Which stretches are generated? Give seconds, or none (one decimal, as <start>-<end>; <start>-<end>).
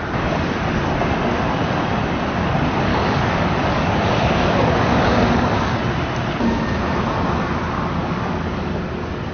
2.9-5.8; 8.0-8.8